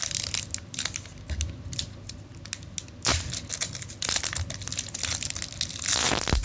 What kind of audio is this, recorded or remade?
recorded